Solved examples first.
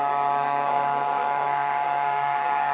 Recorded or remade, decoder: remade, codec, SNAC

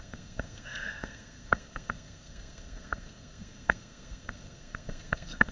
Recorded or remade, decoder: remade, codec, SNAC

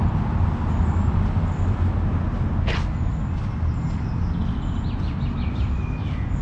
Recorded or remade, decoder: recorded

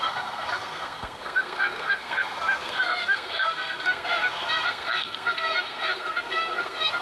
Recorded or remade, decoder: remade, codec, SNAC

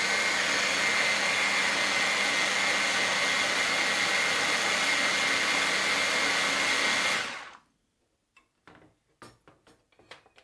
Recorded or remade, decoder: recorded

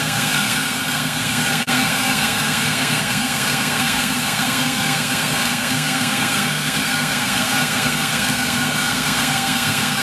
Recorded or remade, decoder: remade, codec, SNAC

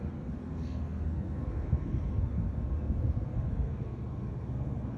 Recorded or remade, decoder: remade, codec, SNAC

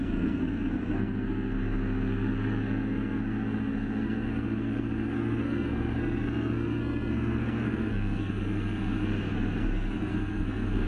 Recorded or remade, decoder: remade, codec, SNAC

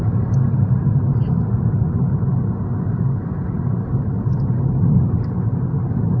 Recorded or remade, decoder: recorded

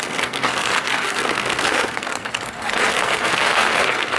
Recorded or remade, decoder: remade, codec, SNAC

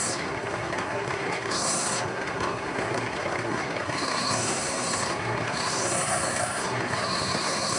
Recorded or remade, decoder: remade, codec, SNAC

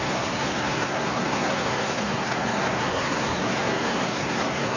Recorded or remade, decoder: remade, codec, SNAC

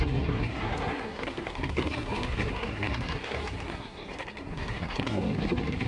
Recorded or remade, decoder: remade, codec, SNAC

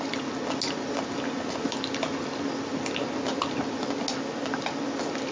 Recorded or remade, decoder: recorded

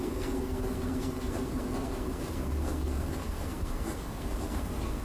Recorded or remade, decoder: remade, codec, SNAC